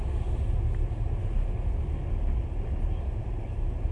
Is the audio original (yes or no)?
yes